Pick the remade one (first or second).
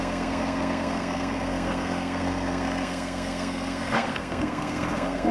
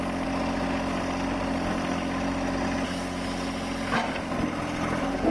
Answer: first